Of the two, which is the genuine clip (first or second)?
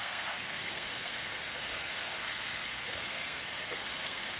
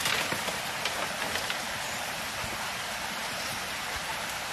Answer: second